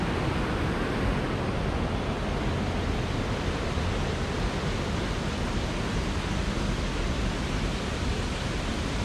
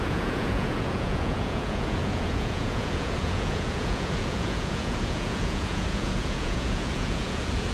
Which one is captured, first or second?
first